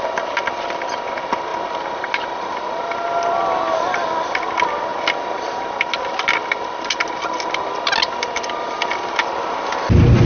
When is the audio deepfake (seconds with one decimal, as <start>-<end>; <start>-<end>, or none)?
none